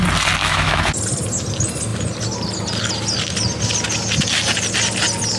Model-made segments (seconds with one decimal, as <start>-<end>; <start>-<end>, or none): 0.4-0.9